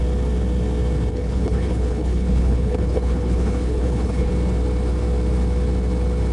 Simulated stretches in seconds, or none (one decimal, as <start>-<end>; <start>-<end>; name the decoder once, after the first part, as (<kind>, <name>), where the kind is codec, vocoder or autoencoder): 1.1-4.3 (codec, HILCodec)